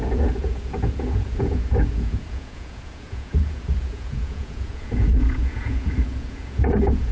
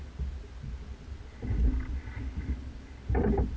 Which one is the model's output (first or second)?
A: first